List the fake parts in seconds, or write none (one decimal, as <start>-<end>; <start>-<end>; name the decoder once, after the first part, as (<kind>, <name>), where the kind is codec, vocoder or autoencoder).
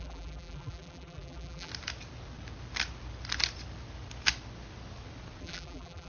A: 0.0-1.7 (vocoder, BigVGAN v2); 5.4-6.1